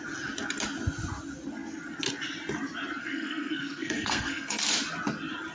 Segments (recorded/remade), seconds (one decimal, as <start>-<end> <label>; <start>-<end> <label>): 0.0-3.0 recorded; 3.0-4.6 remade; 4.6-5.5 recorded